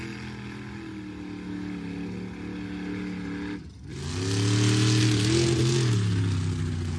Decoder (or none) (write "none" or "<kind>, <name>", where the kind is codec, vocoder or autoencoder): none